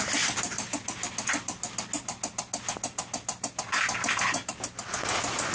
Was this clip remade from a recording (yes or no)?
no